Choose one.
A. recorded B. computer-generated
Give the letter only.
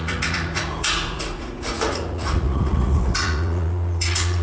B